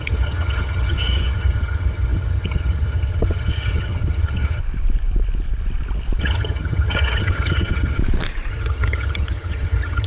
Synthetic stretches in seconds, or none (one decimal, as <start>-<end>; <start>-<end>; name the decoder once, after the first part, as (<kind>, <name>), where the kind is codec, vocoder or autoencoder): 0.0-4.6 (vocoder, HiFi-GAN); 6.2-8.0; 8.5-10.1